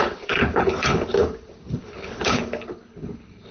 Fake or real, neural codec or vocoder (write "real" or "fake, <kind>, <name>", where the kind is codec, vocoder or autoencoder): fake, codec, HILCodec